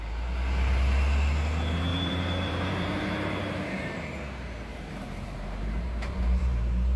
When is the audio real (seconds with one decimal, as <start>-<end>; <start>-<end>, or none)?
0.0-1.9; 4.0-4.7; 6.6-7.0